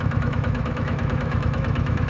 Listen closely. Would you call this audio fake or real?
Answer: fake